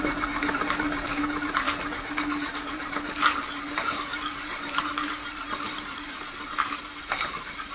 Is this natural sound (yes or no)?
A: no